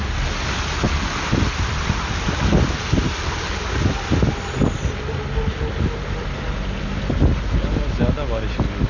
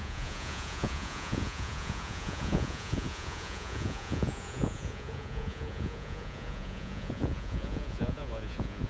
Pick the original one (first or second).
first